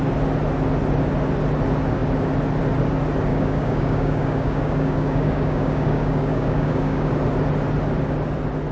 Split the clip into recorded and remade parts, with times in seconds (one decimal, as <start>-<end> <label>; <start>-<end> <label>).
0.0-3.3 recorded; 3.3-7.1 remade; 7.1-8.7 recorded